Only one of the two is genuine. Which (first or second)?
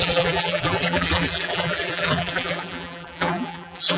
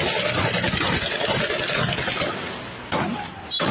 second